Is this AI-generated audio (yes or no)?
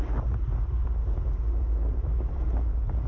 no